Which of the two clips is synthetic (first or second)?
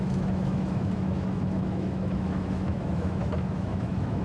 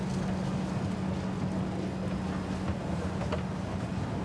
first